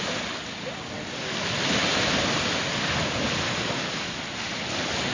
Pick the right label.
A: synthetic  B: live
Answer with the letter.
B